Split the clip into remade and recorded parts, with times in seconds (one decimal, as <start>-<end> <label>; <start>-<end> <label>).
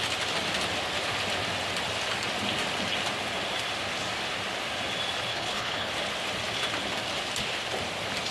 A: 0.0-5.3 recorded; 5.3-5.9 remade; 5.9-8.3 recorded